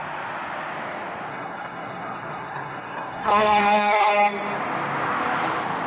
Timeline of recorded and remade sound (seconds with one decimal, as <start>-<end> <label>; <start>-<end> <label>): 0.0-1.3 recorded; 1.3-4.1 remade; 4.1-5.9 recorded